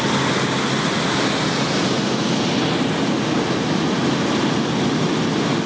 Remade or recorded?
recorded